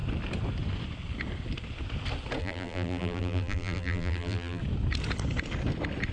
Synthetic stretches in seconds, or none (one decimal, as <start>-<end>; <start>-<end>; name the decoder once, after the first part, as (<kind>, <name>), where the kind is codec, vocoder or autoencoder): 2.4-4.6 (vocoder, BigVGAN v2)